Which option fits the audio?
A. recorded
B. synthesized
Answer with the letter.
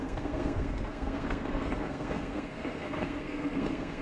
B